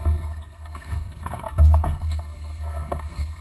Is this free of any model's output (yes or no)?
no